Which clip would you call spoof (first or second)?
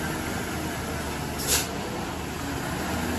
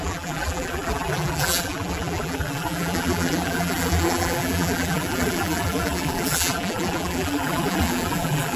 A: second